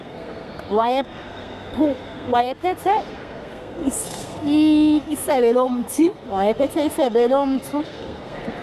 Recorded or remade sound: remade